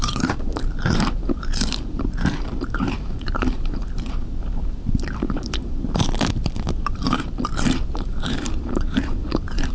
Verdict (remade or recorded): remade